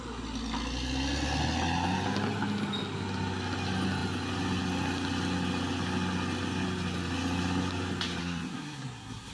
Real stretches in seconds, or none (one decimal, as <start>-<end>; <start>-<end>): 0.0-8.2